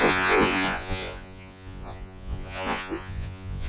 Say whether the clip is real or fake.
fake